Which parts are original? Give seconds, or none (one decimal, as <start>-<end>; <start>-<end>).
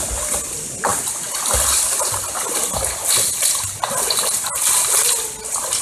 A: 0.0-5.8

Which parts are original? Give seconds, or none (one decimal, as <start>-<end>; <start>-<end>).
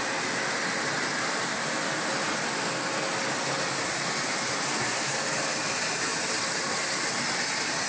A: 0.0-7.9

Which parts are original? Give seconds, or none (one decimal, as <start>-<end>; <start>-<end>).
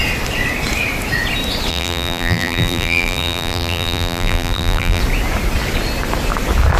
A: 0.0-1.7; 5.0-6.8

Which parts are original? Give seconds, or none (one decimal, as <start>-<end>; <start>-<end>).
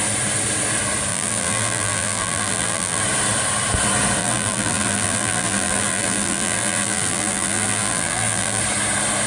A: 0.0-1.1; 3.0-4.2; 8.6-9.3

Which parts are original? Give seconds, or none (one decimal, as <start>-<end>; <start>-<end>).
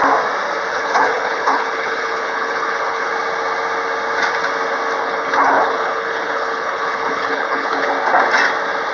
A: 0.0-0.7; 3.1-5.0; 7.9-8.9